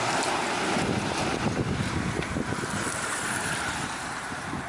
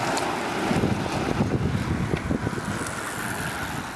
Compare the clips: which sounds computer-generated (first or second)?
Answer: first